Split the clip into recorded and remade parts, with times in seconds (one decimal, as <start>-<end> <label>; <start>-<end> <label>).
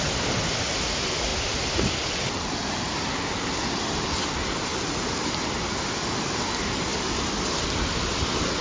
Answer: 0.0-8.6 recorded